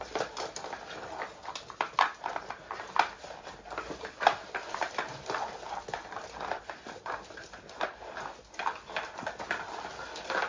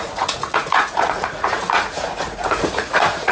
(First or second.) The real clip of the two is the first